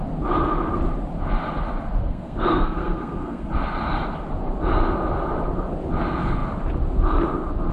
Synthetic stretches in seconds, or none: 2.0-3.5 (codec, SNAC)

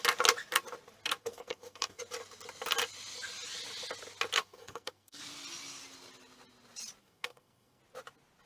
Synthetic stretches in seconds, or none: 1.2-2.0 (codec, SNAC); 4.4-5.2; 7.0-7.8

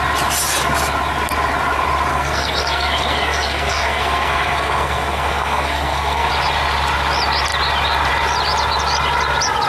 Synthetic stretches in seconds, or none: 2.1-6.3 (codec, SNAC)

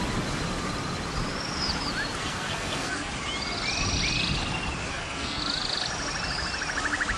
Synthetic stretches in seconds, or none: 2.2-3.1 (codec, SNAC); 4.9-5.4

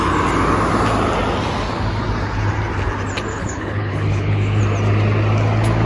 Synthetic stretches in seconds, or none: 3.3-4.6 (codec, HILCodec)

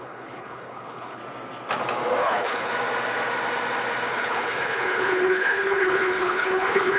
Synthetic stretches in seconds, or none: 0.0-1.2 (codec, HILCodec); 2.2-2.7; 4.1-7.0